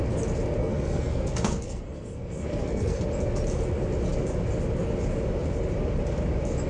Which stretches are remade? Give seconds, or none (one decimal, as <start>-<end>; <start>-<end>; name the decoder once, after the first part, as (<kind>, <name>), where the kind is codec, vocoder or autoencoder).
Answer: 0.6-3.0 (codec, SNAC)